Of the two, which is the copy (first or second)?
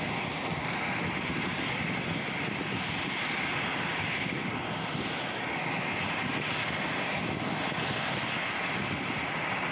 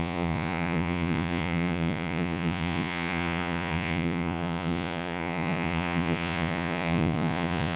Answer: second